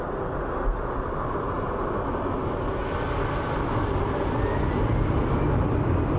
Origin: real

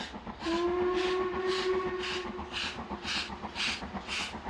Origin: real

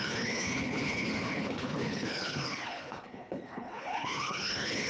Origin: fake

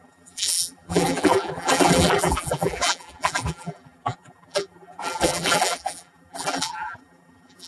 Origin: fake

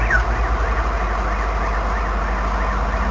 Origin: real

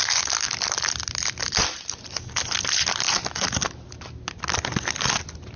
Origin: real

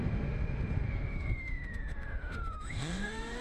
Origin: fake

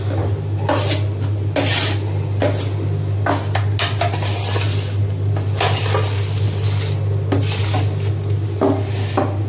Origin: real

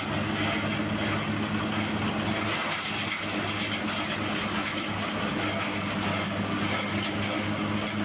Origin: real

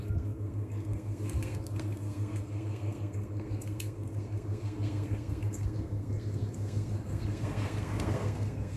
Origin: fake